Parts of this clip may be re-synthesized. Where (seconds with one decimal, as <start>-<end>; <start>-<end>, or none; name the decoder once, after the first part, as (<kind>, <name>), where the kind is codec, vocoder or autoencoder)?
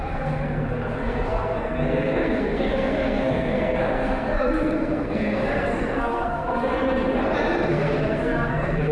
0.0-6.7 (codec, SNAC); 7.7-8.9